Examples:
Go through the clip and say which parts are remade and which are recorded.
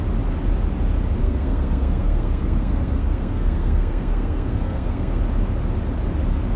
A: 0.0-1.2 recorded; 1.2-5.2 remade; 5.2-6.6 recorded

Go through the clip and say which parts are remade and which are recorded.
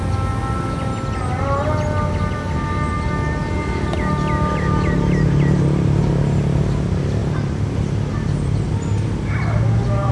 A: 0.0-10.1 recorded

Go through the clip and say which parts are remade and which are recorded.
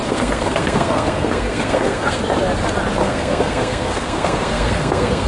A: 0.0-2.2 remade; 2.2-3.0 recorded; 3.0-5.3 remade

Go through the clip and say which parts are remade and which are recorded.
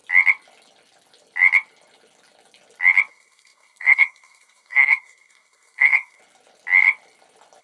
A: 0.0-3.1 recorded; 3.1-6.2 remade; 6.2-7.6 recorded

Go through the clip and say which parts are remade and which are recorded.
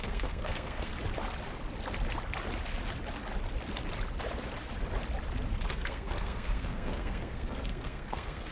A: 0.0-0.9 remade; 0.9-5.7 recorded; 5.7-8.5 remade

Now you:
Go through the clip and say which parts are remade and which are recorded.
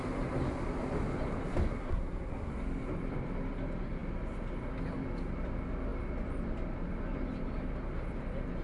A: 0.0-1.7 recorded; 1.7-2.5 remade; 2.5-8.6 recorded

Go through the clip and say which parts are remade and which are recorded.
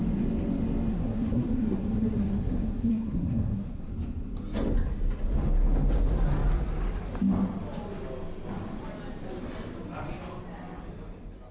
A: 0.0-0.9 recorded; 0.9-3.9 remade; 3.9-11.5 recorded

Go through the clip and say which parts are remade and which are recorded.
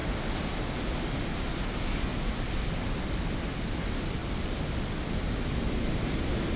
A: 0.0-6.6 recorded